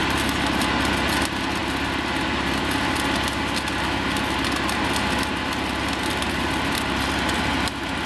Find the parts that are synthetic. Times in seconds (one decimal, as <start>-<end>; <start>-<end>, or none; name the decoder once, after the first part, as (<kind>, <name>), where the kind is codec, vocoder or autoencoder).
none